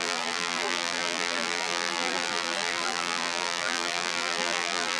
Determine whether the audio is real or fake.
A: fake